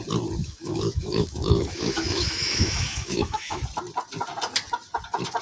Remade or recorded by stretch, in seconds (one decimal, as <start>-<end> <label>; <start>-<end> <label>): 0.0-0.4 recorded; 0.4-3.6 remade; 3.6-5.4 recorded

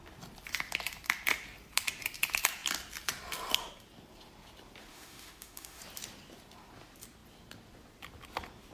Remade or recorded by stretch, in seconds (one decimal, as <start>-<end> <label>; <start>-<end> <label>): 0.0-4.9 recorded; 4.9-5.8 remade; 5.8-8.7 recorded